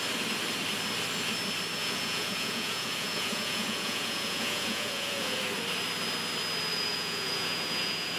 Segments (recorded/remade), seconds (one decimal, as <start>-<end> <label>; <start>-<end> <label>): 0.0-1.8 recorded; 1.8-5.4 remade; 5.4-6.7 recorded; 6.7-8.2 remade